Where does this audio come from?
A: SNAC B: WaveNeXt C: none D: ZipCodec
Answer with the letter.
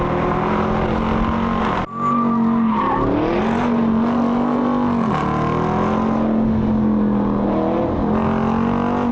C